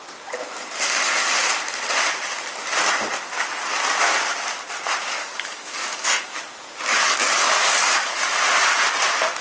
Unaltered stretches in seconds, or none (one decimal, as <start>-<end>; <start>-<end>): 0.0-5.0; 6.4-6.9; 8.2-9.4